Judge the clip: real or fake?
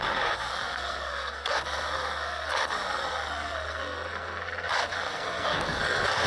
fake